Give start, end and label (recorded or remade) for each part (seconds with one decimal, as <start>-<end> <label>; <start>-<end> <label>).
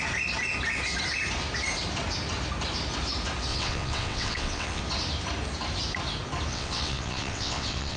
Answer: 0.0-3.5 recorded; 3.5-4.8 remade; 4.8-6.5 recorded; 6.5-8.0 remade